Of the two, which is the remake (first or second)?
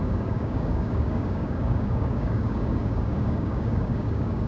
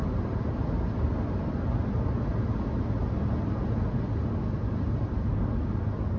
first